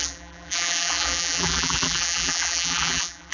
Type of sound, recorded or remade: remade